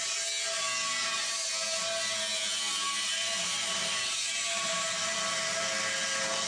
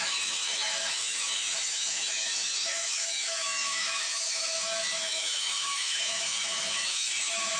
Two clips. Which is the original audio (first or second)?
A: first